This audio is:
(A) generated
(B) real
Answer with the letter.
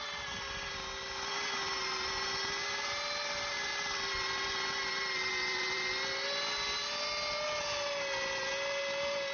B